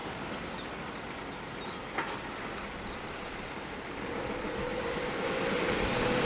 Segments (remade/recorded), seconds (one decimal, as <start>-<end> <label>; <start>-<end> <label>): 0.0-3.8 recorded; 3.8-5.0 remade; 5.0-5.6 recorded; 5.6-6.3 remade